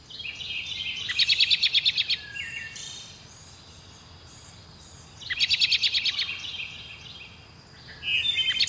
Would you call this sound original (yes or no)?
yes